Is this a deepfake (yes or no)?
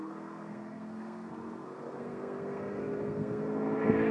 yes